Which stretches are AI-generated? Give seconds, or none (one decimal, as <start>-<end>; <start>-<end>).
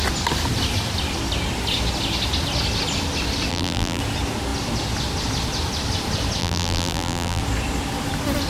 3.5-4.0; 6.4-7.4